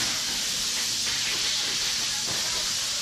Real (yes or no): yes